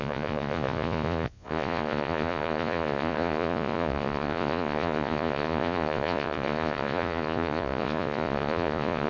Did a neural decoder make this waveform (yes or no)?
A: yes